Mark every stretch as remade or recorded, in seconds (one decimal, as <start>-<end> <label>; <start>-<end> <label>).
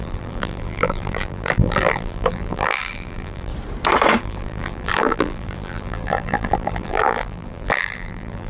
0.0-3.5 remade; 3.5-4.2 recorded; 4.2-8.5 remade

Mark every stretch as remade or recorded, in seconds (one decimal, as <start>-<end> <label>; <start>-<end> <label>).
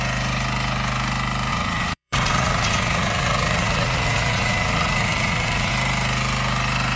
0.0-1.5 recorded; 1.5-5.7 remade; 5.7-7.0 recorded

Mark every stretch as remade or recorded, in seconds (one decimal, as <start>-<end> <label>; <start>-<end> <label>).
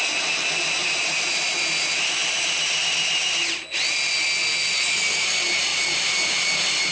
0.0-0.8 recorded; 0.8-1.4 remade; 1.4-5.7 recorded; 5.7-6.3 remade; 6.3-6.9 recorded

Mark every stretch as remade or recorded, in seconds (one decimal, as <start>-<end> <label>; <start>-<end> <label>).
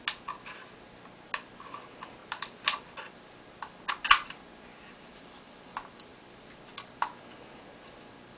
0.0-8.4 recorded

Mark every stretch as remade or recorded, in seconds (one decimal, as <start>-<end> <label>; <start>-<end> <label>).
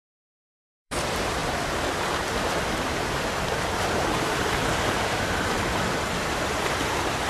0.0-1.4 remade; 1.4-3.8 recorded; 3.8-5.7 remade; 5.7-6.3 recorded; 6.3-7.3 remade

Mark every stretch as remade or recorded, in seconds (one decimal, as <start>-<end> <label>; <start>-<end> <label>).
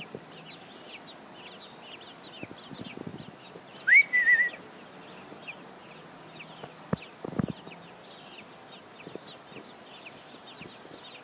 0.0-11.2 recorded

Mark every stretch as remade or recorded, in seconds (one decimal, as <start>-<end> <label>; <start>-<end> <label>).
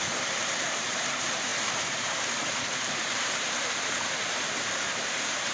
0.0-5.5 remade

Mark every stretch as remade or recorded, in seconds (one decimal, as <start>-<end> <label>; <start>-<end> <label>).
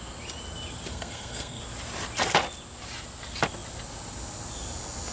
0.0-0.9 recorded; 0.9-1.6 remade; 1.6-5.1 recorded